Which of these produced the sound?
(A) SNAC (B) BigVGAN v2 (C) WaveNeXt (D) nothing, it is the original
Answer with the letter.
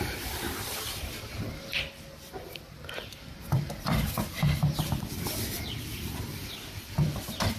B